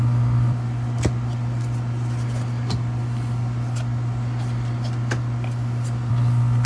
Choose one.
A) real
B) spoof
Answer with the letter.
A